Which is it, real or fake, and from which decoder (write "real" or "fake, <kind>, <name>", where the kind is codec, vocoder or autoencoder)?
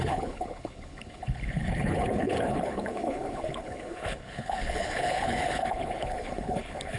fake, codec, HILCodec